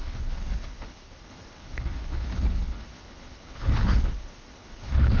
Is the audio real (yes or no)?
no